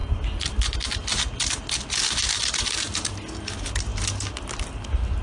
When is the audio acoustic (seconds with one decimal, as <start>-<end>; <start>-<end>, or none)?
0.0-5.2

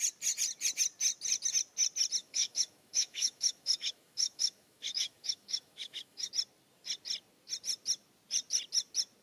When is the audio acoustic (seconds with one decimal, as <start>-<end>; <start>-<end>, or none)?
0.0-2.2; 6.3-9.2

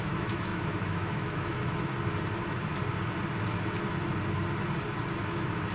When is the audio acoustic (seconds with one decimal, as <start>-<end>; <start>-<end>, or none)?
1.9-5.3

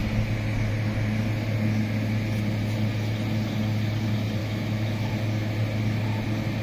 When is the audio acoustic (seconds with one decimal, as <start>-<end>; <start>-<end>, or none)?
0.0-4.4; 5.1-6.6

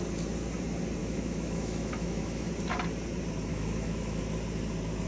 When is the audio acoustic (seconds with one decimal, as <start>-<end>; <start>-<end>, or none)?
0.0-1.0; 2.5-3.5; 4.2-5.1

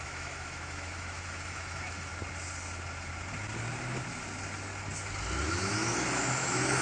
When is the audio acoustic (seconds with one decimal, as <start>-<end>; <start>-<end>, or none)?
2.1-5.5

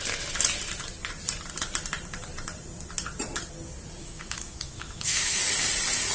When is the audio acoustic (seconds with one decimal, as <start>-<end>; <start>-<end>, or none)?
0.0-4.0; 5.4-6.1